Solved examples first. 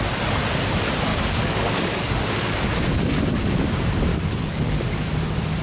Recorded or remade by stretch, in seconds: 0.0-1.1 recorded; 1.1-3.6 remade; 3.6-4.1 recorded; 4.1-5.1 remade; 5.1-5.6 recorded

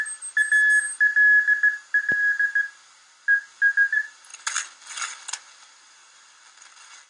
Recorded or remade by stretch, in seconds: 0.0-7.1 recorded

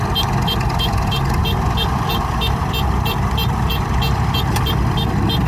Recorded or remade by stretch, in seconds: 0.0-5.5 recorded